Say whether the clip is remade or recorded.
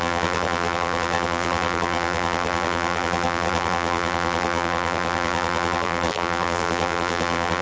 remade